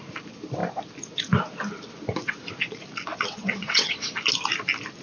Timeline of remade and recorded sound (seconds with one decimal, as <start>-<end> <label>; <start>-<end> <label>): 0.0-3.1 recorded; 3.1-4.1 remade; 4.1-5.0 recorded